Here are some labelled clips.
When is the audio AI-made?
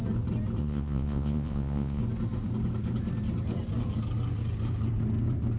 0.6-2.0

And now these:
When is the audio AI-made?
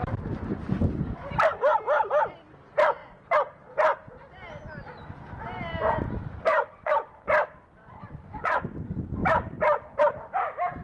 6.5-7.1; 7.8-8.6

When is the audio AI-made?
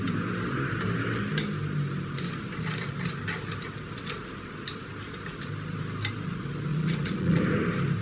6.7-7.4